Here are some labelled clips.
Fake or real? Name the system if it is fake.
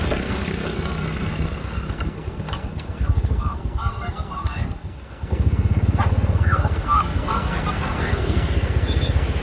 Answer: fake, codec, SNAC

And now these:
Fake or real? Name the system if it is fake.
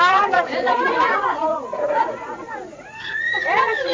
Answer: fake, vocoder, Vocos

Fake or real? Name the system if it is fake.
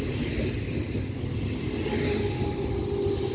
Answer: real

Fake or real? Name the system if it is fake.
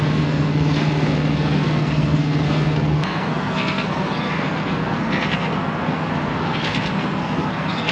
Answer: fake, codec, SNAC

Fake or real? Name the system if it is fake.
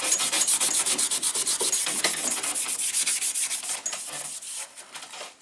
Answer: real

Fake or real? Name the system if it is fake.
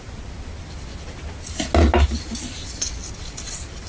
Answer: real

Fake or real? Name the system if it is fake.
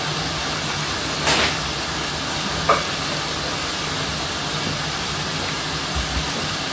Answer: real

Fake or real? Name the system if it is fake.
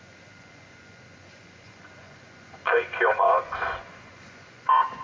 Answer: fake, vocoder, Vocos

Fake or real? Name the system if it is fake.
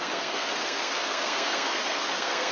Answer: fake, codec, SNAC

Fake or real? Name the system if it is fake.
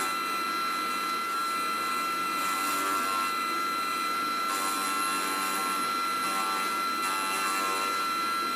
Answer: real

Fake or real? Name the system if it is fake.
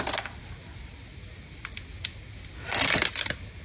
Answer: real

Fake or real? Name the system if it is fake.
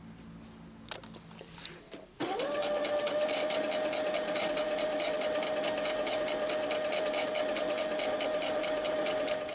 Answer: real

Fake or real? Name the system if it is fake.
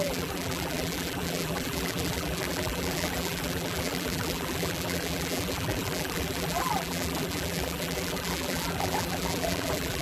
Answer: fake, vocoder, BigVGAN v2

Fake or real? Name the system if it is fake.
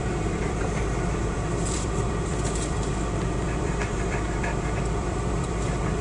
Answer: fake, vocoder, BigVGAN v2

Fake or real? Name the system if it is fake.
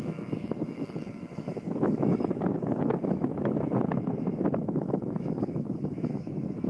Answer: fake, autoencoder, DAC-VAE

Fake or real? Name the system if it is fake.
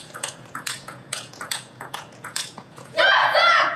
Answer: fake, vocoder, Vocos